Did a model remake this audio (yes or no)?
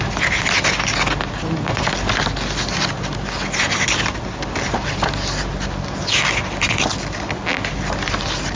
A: no